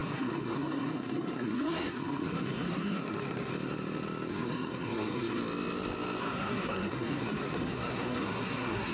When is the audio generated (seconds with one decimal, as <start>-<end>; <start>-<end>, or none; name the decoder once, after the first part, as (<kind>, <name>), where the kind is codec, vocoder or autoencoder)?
0.0-3.5 (codec, SNAC); 4.3-5.4; 6.2-8.9